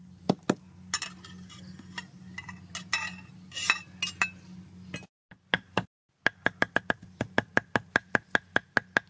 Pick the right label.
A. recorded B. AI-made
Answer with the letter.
A